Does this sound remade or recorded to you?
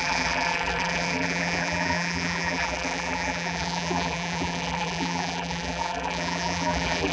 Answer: remade